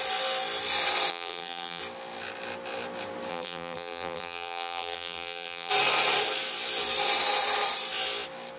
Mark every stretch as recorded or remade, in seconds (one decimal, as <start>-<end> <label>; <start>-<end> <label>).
0.0-1.1 recorded; 1.1-1.8 remade; 1.8-3.3 recorded; 3.3-5.7 remade; 5.7-8.6 recorded